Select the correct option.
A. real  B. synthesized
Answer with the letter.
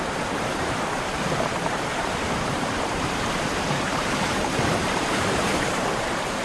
B